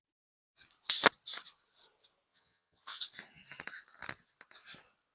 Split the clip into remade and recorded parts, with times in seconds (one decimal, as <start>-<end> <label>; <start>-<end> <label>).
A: 0.0-2.3 recorded; 2.3-3.0 remade; 3.0-5.1 recorded